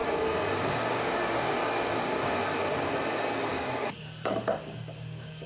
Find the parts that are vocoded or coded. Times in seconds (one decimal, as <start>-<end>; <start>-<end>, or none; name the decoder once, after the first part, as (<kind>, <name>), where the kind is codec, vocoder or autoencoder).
0.0-2.3 (codec, DAC); 3.5-5.5